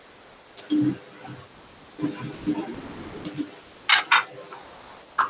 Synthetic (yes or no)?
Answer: no